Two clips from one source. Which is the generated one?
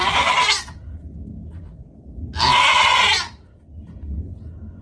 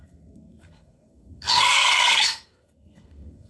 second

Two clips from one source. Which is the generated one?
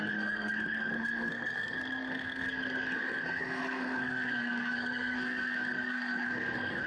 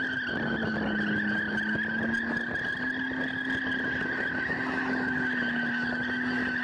first